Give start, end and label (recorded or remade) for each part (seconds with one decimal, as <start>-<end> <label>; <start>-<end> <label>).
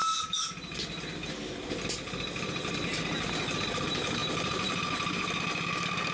0.0-6.1 recorded